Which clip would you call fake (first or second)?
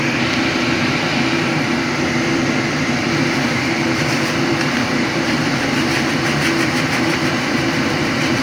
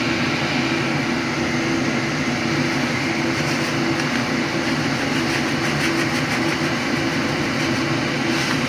first